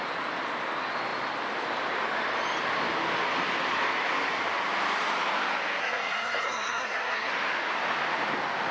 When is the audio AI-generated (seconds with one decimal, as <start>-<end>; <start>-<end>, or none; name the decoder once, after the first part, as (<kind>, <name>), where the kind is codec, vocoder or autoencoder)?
5.8-7.3 (codec, SNAC)